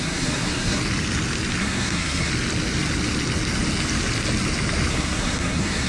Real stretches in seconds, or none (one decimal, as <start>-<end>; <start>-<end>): 0.8-1.6; 2.3-4.9

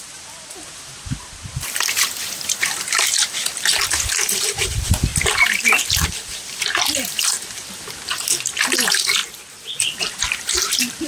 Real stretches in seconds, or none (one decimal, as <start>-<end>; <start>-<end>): 9.2-9.8

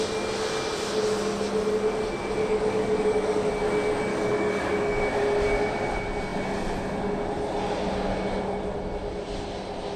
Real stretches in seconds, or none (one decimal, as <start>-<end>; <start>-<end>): 0.0-2.4; 3.5-4.1; 5.0-10.0

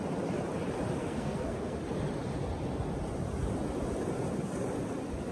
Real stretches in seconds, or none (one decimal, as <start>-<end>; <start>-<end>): 0.0-1.0; 1.8-5.3

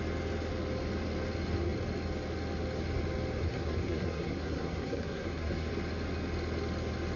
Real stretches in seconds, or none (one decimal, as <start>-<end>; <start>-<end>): 0.0-3.4; 5.7-7.2

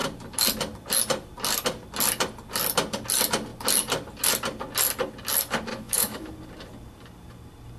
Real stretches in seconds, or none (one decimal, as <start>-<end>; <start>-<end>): 0.0-5.7; 6.3-7.8

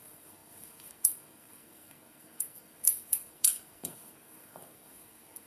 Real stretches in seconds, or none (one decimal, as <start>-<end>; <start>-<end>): none

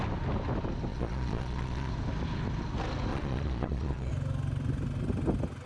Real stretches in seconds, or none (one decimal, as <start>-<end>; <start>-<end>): 0.0-0.9; 1.9-3.1; 4.1-5.7